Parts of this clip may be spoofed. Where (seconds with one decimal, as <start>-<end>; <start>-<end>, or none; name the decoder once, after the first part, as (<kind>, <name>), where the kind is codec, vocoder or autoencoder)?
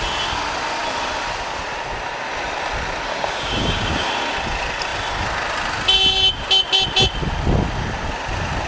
3.1-4.1 (codec, DAC)